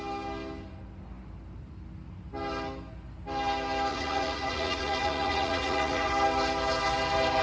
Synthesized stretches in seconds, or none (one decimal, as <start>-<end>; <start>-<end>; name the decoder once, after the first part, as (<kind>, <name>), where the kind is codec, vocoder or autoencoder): 3.9-6.1 (vocoder, Vocos)